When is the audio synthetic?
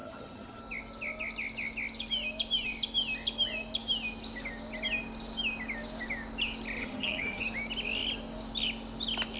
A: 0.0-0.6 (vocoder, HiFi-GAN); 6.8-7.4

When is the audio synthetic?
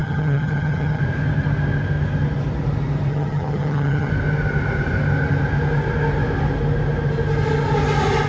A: 0.0-1.0 (vocoder, HiFi-GAN); 3.1-4.1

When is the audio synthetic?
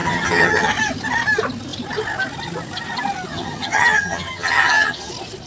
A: 0.0-0.7 (vocoder, HiFi-GAN); 3.3-5.1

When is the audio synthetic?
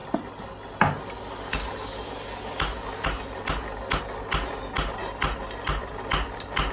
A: none